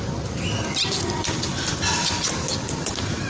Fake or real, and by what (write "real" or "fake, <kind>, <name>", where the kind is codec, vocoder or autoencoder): real